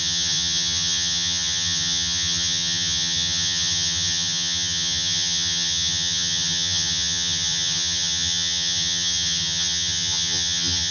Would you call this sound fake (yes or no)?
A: yes